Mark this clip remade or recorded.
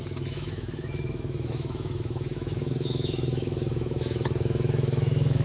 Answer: remade